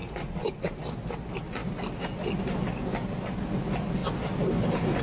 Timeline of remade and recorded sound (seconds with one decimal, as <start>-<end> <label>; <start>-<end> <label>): 0.0-0.8 remade; 0.8-5.0 recorded

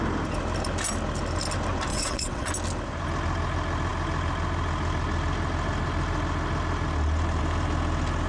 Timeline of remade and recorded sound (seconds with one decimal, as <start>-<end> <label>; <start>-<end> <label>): 0.0-1.9 recorded; 1.9-2.5 remade; 2.5-8.3 recorded

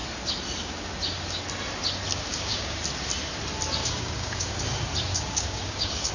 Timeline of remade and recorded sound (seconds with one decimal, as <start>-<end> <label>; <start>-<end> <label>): 0.0-2.3 recorded; 2.3-2.8 remade; 2.8-3.8 recorded; 3.8-4.6 remade; 4.6-5.1 recorded; 5.1-6.1 remade

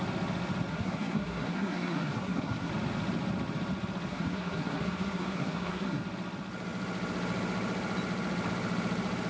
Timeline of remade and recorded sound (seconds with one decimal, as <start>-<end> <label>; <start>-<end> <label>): 0.0-0.7 recorded; 0.7-2.7 remade; 2.7-4.1 recorded; 4.1-6.0 remade; 6.0-9.3 recorded

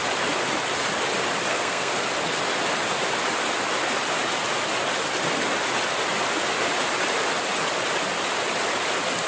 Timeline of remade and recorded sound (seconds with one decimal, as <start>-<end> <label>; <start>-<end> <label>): 0.0-1.5 recorded; 1.5-2.0 remade; 2.0-9.3 recorded

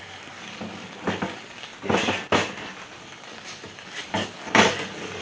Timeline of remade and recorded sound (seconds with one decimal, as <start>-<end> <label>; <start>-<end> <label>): 0.0-1.7 remade; 1.7-3.0 recorded; 3.0-5.2 remade

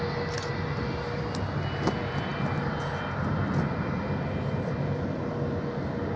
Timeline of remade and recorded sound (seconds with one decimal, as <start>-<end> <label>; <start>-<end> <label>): 0.0-6.2 recorded

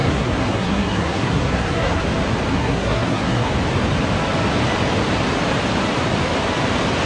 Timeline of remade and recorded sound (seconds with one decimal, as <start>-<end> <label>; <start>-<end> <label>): 0.0-2.0 remade; 2.0-2.5 recorded; 2.5-3.5 remade; 3.5-7.1 recorded